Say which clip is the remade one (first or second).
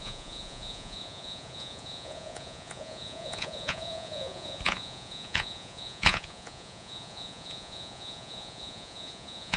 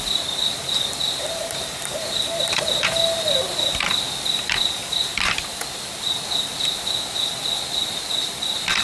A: first